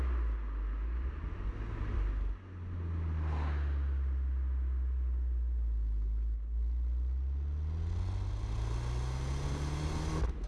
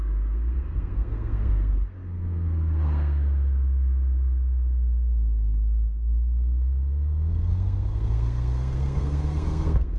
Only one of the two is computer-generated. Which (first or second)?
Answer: second